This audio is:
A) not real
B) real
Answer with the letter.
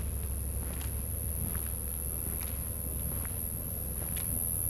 B